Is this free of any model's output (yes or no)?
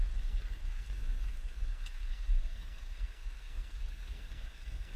no